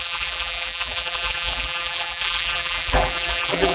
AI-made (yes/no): yes